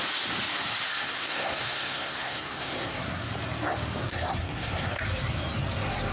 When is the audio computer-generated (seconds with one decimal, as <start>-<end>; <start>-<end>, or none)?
0.9-3.3; 4.0-5.0